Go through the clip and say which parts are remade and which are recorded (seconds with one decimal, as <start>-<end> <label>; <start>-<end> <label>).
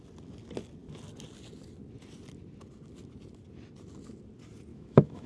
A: 0.0-4.7 recorded; 4.7-5.3 remade